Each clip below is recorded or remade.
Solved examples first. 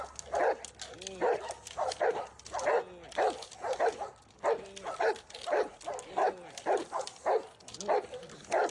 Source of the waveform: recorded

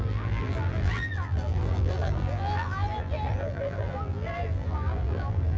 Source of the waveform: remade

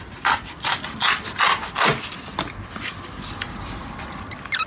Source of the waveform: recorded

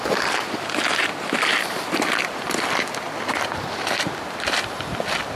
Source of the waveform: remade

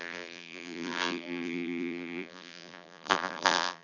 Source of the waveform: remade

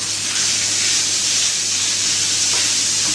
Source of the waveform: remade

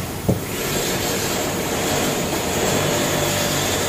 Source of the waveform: remade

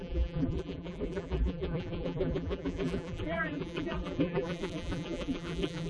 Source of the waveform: remade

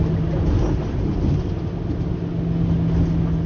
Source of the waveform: recorded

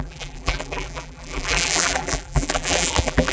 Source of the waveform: remade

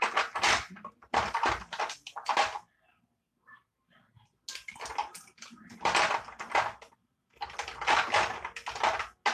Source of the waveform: recorded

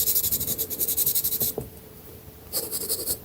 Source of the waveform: remade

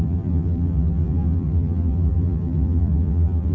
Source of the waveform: remade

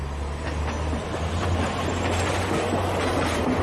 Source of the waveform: recorded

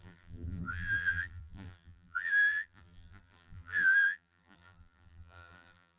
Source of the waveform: remade